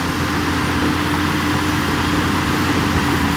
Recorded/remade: recorded